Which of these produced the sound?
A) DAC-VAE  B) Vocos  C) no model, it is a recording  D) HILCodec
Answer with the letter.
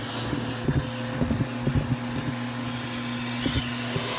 C